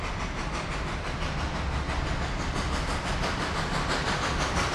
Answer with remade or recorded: recorded